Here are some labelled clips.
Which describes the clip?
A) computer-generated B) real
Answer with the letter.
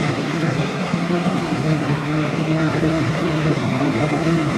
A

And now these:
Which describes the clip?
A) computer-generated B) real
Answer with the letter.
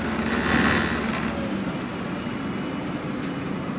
B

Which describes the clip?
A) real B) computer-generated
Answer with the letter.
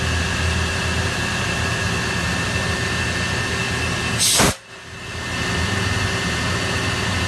A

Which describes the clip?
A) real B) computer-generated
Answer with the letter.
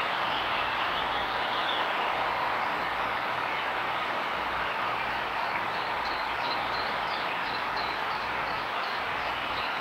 B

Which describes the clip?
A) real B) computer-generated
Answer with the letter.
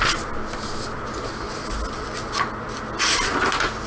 A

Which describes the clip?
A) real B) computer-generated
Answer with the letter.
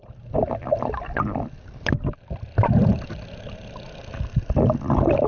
A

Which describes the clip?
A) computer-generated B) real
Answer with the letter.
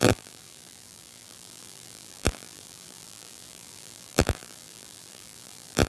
A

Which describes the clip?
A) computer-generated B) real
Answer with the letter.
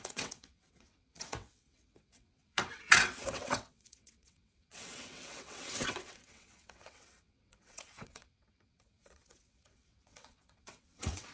A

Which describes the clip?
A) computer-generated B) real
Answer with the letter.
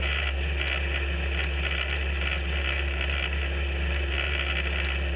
B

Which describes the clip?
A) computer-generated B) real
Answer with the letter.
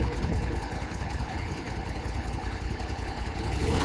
A